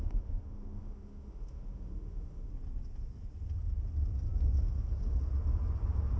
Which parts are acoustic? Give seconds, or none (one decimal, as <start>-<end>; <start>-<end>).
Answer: 2.5-6.2